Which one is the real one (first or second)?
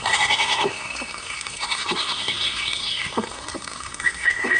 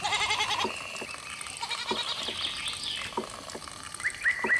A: second